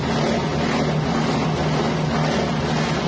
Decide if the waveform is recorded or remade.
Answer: recorded